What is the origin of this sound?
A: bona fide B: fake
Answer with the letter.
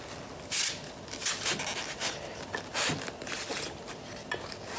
A